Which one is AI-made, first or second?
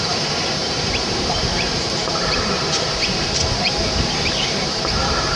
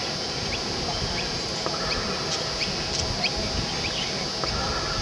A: first